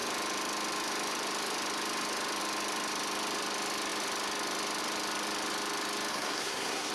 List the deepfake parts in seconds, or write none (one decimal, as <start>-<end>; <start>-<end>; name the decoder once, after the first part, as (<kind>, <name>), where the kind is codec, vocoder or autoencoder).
6.1-6.9 (codec, SNAC)